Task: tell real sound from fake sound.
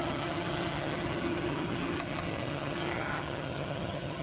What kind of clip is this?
fake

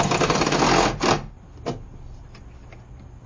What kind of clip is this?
real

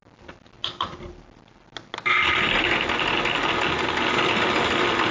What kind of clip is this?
real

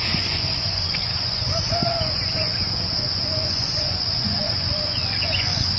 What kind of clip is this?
fake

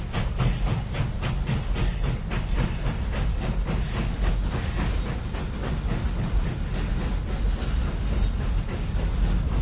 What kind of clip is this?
real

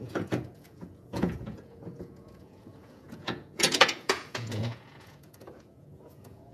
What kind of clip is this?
fake